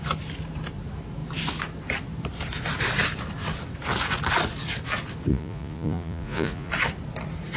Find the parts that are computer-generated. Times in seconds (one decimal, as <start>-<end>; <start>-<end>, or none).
5.3-6.7